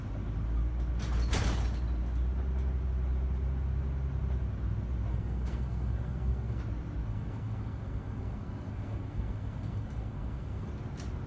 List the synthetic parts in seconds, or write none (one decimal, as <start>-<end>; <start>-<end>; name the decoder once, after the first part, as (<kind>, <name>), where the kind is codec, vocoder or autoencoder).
5.1-6.6 (codec, SNAC); 7.1-10.7